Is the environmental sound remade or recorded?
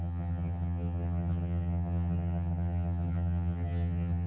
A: remade